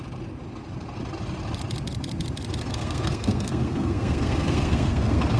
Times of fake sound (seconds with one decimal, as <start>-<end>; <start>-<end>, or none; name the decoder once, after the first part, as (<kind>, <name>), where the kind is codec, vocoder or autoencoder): 2.7-5.4 (codec, SNAC)